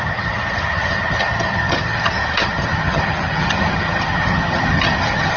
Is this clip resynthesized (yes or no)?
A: yes